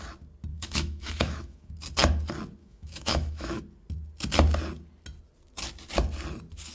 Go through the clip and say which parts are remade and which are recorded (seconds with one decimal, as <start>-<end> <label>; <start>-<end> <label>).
0.0-0.5 recorded; 0.5-1.7 remade; 1.7-2.6 recorded; 2.6-3.6 remade; 3.6-6.7 recorded

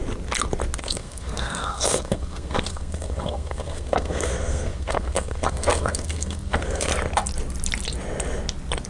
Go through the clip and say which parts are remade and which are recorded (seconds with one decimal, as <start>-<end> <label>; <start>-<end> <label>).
0.0-0.8 recorded; 0.8-6.9 remade; 6.9-8.9 recorded

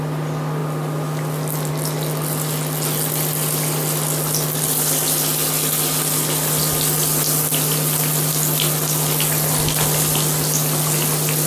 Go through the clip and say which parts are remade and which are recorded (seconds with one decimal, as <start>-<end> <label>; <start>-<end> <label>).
0.0-11.5 recorded

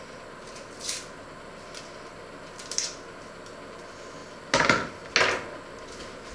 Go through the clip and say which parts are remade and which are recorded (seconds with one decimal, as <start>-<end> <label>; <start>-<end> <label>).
0.0-6.3 recorded

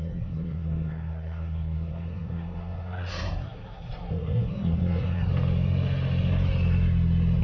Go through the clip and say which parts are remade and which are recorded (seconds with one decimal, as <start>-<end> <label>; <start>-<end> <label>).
0.0-5.3 remade; 5.3-7.4 recorded